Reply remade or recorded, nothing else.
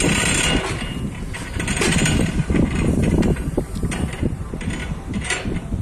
recorded